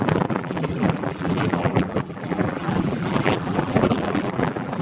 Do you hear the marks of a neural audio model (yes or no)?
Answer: yes